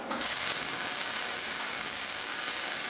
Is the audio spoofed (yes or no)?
yes